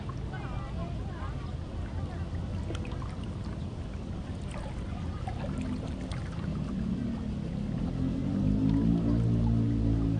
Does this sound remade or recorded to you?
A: recorded